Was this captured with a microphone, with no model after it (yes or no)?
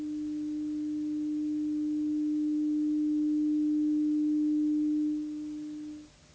yes